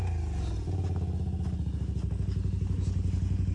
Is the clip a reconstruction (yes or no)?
no